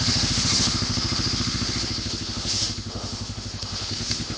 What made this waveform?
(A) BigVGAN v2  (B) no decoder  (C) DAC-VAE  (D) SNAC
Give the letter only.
C